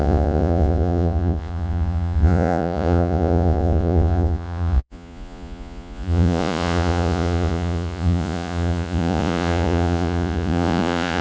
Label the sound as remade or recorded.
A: remade